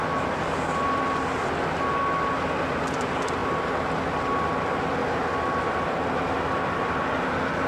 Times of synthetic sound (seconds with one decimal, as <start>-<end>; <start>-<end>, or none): none